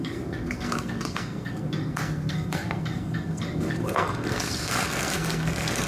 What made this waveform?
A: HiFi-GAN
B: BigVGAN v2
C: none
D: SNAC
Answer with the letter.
D